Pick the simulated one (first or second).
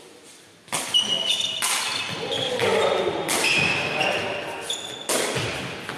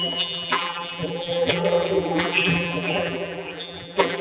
second